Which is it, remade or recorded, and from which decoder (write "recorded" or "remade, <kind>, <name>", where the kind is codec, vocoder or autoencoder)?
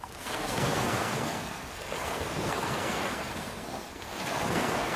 remade, codec, SNAC